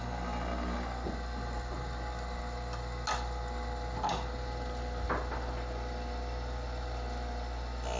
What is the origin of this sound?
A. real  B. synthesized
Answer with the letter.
A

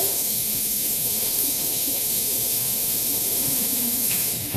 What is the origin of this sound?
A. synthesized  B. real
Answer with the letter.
A